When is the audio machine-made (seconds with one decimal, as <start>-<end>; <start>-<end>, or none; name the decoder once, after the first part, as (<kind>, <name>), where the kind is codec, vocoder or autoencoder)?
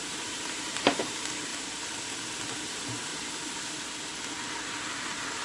0.0-1.5 (vocoder, BigVGAN v2); 2.6-3.1; 5.0-5.4